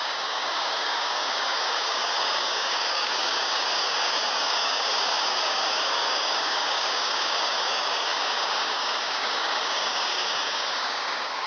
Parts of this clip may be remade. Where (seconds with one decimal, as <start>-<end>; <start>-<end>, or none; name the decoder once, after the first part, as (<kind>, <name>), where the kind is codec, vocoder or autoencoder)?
0.0-11.5 (codec, DAC)